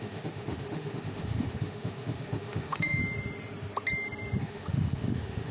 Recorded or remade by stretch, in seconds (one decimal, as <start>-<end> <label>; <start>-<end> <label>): 0.0-3.0 remade; 3.0-4.4 recorded; 4.4-5.5 remade